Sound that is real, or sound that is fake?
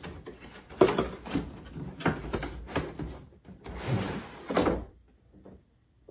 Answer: real